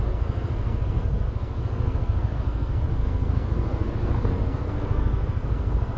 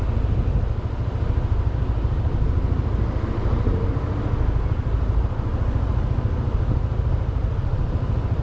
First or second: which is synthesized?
first